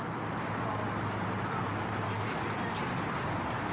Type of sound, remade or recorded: recorded